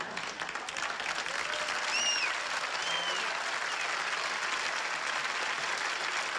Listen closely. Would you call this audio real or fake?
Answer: real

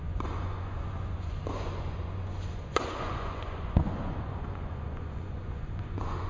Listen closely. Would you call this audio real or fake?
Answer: fake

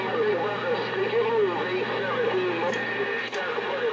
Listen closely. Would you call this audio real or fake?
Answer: real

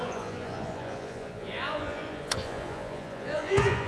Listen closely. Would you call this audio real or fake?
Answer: fake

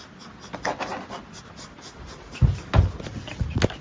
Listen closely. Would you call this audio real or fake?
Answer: real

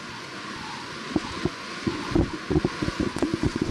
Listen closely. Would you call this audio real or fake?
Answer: fake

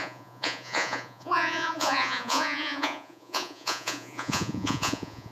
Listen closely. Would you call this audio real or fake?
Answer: fake